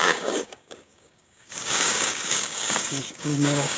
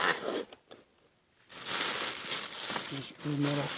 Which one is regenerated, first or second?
first